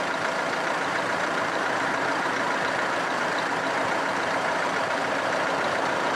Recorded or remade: remade